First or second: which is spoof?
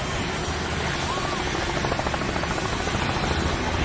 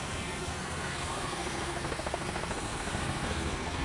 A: second